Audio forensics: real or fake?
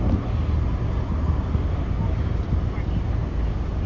real